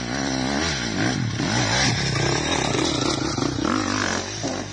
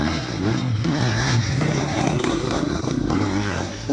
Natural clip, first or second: first